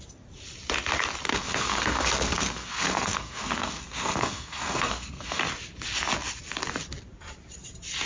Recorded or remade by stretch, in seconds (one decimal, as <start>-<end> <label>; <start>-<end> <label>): 0.0-1.3 recorded; 1.3-5.4 remade; 5.4-8.1 recorded